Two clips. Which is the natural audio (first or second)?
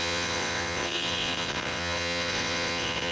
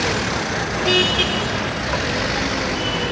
second